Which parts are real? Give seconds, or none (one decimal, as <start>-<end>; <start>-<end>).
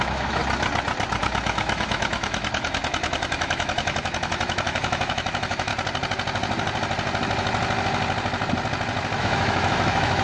0.4-1.2; 5.7-9.2